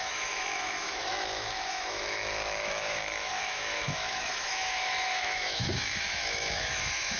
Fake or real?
fake